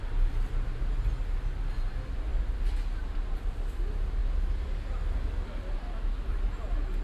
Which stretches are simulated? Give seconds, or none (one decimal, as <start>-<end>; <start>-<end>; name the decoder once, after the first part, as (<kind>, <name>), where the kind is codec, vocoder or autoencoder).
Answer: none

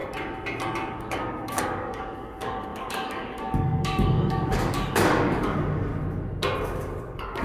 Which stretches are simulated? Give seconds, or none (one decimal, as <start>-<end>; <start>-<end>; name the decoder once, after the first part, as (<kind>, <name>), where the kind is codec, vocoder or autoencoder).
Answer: 0.9-5.9 (codec, DAC); 7.0-7.4

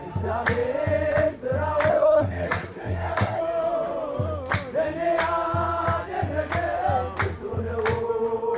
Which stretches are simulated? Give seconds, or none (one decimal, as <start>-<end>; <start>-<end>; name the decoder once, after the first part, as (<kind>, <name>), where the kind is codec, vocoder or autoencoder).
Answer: 1.9-3.4 (codec, SNAC)